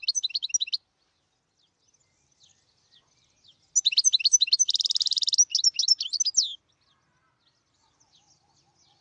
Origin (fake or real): real